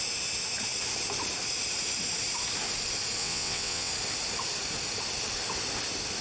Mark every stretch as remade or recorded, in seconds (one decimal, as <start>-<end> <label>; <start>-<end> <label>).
0.0-3.2 recorded; 3.2-3.9 remade; 3.9-6.2 recorded